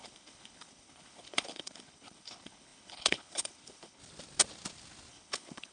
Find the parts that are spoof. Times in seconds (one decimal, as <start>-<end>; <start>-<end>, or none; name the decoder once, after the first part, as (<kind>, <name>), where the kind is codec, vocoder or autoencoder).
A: 0.0-4.0 (codec, HILCodec); 5.1-5.7